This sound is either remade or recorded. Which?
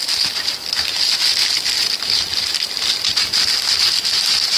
recorded